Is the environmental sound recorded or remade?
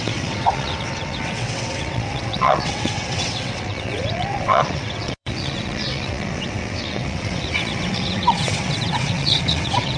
remade